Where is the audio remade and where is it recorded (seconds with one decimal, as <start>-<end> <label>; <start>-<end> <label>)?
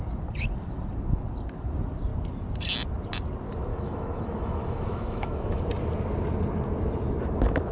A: 0.0-3.7 recorded; 3.7-5.6 remade; 5.6-7.7 recorded